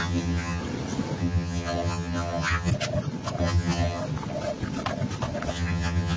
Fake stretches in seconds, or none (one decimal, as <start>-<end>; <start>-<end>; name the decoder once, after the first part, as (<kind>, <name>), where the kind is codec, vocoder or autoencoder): 0.0-0.6 (vocoder, HiFi-GAN); 1.2-2.7; 3.4-4.0; 5.5-6.2